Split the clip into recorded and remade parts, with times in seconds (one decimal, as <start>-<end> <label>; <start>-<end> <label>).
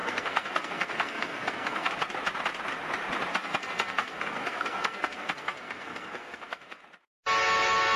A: 0.0-1.9 remade; 1.9-3.3 recorded; 3.3-6.8 remade; 6.8-8.0 recorded